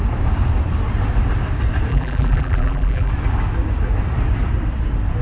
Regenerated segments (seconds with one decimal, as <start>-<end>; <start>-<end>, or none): 1.9-3.1